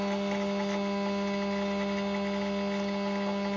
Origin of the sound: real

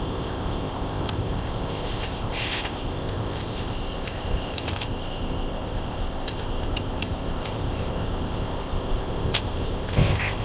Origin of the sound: fake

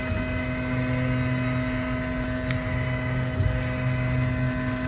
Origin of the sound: real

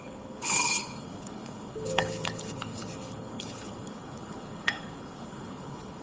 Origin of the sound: fake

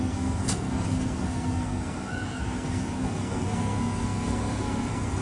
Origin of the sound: fake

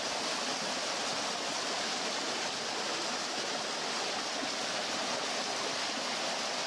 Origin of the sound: real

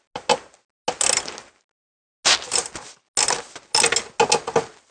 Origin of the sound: real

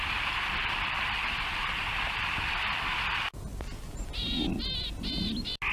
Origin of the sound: real